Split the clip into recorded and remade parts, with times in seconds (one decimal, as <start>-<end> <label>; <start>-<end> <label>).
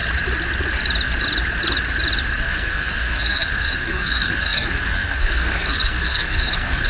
0.0-2.4 recorded; 2.4-6.9 remade